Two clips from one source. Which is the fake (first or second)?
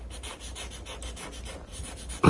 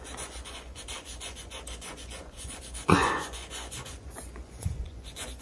second